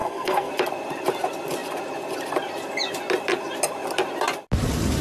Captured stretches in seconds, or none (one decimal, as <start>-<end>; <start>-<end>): 0.5-5.0